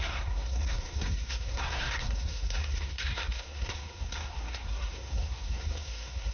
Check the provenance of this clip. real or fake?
fake